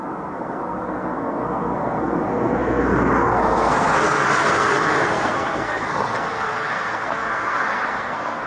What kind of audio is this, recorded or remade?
remade